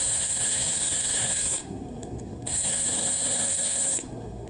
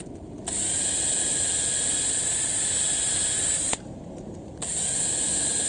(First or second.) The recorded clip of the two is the second